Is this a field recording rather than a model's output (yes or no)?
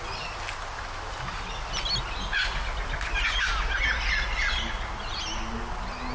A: yes